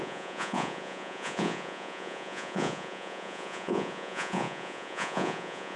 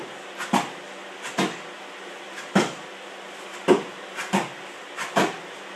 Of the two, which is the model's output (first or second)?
first